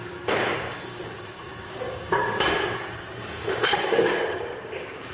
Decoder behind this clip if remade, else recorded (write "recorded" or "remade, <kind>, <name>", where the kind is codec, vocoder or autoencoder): remade, codec, DAC